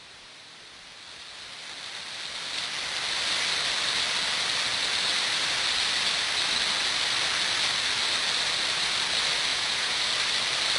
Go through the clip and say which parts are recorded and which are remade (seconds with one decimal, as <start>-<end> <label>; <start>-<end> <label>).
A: 0.0-9.5 recorded; 9.5-10.1 remade; 10.1-10.8 recorded